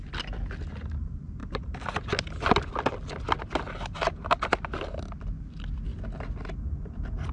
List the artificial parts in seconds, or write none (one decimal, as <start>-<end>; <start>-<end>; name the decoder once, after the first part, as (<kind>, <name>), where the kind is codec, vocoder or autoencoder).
none